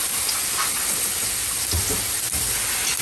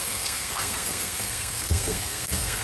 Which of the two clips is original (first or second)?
first